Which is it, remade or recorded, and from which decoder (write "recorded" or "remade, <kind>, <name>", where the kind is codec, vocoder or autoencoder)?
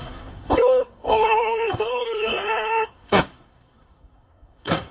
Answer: remade, codec, SNAC